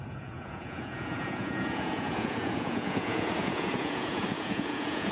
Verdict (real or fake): fake